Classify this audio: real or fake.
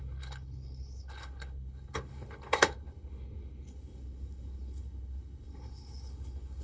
fake